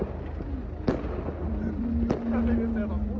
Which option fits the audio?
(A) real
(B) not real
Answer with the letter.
A